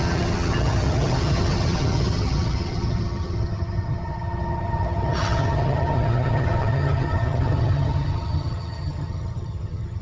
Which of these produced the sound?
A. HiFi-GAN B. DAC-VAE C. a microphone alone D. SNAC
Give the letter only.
A